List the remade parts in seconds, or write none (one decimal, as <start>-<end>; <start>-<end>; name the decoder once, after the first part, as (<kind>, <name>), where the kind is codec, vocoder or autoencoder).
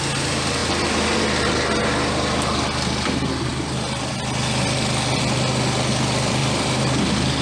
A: 0.6-1.2 (vocoder, BigVGAN v2); 6.4-7.0